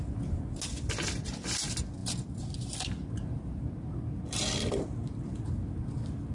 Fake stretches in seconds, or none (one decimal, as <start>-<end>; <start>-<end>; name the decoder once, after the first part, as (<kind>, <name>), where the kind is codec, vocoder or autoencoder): none